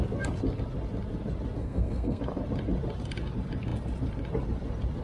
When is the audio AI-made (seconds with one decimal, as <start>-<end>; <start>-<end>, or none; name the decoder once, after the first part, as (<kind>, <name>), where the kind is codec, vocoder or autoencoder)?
1.6-2.2 (codec, SNAC)